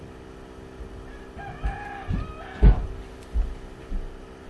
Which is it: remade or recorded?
recorded